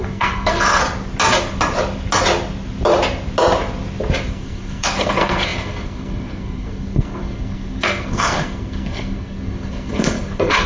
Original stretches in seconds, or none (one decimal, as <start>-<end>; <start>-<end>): 0.8-4.3